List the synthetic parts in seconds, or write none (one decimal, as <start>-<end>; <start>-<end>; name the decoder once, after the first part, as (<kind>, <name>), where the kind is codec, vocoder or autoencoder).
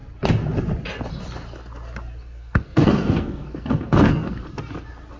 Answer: 2.2-4.5 (codec, SNAC)